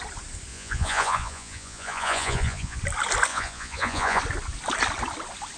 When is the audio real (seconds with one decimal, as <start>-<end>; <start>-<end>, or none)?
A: 0.0-0.5; 2.8-3.3; 4.2-5.6